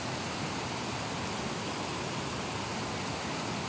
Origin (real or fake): real